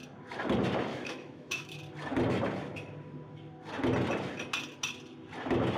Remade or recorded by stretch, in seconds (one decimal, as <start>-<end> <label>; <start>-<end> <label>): 0.0-0.9 recorded; 0.9-1.8 remade; 1.8-5.8 recorded